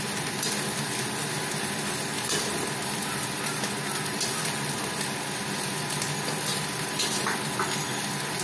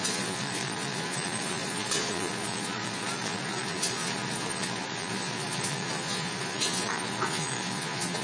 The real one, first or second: first